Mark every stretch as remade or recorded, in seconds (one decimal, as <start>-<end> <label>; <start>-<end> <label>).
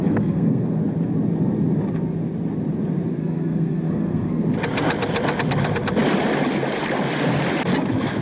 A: 0.0-0.8 remade; 0.8-3.2 recorded; 3.2-4.4 remade; 4.4-8.2 recorded